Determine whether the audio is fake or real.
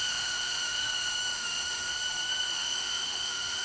fake